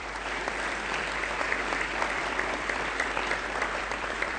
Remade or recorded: remade